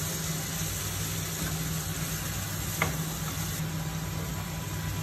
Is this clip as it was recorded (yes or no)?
yes